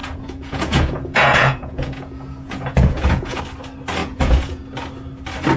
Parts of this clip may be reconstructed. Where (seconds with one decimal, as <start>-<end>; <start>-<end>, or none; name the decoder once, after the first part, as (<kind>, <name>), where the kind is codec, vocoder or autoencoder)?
0.0-3.4 (vocoder, Vocos); 4.0-4.6